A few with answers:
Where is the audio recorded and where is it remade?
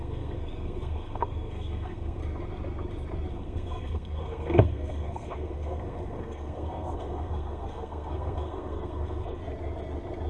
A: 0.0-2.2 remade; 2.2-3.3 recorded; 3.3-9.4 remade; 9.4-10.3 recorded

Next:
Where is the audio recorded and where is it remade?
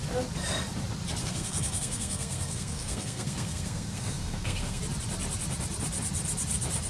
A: 0.0-1.2 recorded; 1.2-4.8 remade; 4.8-6.9 recorded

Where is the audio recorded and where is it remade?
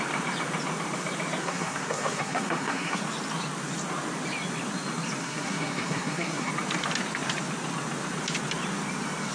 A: 0.0-1.4 recorded; 1.4-3.0 remade; 3.0-5.2 recorded; 5.2-6.5 remade; 6.5-9.3 recorded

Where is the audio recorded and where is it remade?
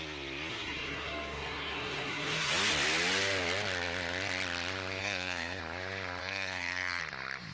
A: 0.0-0.5 recorded; 0.5-2.5 remade; 2.5-5.0 recorded; 5.0-5.6 remade; 5.6-6.2 recorded; 6.2-7.0 remade; 7.0-7.5 recorded